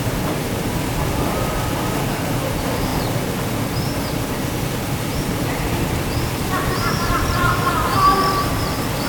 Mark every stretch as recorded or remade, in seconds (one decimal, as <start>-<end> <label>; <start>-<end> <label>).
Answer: 0.0-9.1 remade